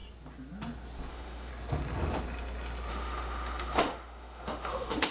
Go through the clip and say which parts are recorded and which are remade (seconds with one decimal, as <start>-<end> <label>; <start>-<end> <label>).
0.0-1.1 recorded; 1.1-1.5 remade; 1.5-2.9 recorded; 2.9-5.1 remade